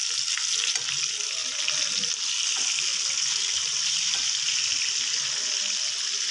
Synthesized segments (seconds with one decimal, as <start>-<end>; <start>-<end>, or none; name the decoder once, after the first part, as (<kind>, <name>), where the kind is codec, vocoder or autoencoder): none